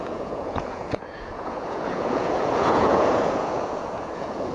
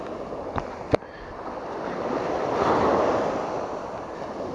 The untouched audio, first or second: second